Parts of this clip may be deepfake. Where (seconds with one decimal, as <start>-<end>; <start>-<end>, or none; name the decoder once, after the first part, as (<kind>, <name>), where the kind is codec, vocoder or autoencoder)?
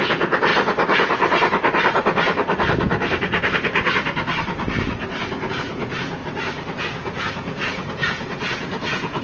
0.0-0.5 (vocoder, Vocos); 5.5-6.2; 6.8-9.2